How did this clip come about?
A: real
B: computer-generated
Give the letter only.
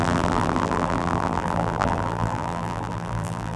B